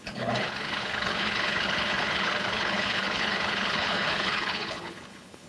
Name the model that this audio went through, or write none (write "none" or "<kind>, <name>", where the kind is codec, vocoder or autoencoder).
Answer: codec, HILCodec